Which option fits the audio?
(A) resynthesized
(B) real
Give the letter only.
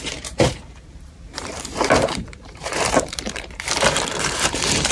A